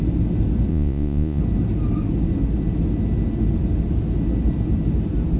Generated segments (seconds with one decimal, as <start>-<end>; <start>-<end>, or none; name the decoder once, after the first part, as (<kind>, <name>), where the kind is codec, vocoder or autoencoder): 0.7-1.4 (vocoder, Vocos)